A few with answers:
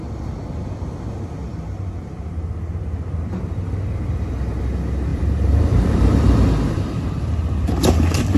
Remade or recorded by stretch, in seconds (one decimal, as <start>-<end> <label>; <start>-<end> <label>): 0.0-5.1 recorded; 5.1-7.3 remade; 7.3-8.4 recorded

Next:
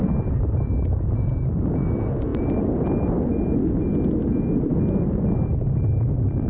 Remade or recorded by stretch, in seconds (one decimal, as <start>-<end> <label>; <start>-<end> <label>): 0.0-6.5 recorded

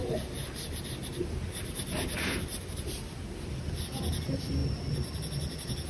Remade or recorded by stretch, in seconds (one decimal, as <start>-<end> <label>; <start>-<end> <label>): 0.0-3.5 remade; 3.5-5.9 recorded